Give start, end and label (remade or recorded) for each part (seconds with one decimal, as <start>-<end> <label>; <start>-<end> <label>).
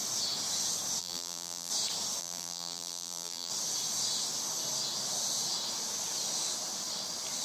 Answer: 0.0-1.0 recorded; 1.0-1.7 remade; 1.7-2.2 recorded; 2.2-3.5 remade; 3.5-7.4 recorded